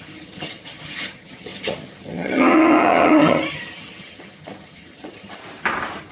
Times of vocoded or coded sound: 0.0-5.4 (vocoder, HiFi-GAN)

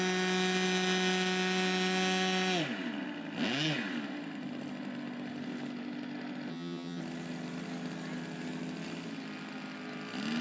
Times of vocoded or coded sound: 6.5-7.0 (vocoder, HiFi-GAN)

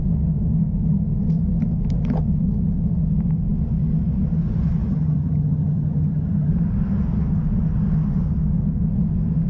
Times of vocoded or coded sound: 4.9-6.5 (vocoder, HiFi-GAN)

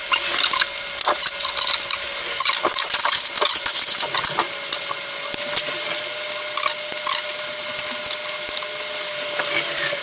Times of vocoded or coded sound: none